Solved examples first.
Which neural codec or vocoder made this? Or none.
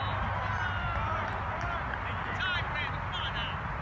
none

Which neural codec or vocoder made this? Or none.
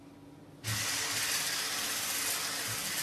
none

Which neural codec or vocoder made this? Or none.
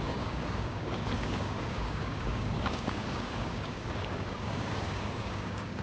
codec, DAC